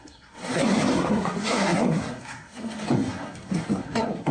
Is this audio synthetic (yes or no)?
yes